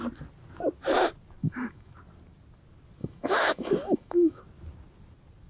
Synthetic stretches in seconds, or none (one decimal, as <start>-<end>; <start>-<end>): 1.4-1.9; 3.0-4.4